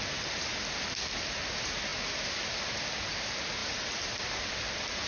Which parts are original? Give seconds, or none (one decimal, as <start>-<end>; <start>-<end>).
0.0-5.1